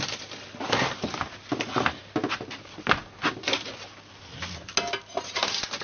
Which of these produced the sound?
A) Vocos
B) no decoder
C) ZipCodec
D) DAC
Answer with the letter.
B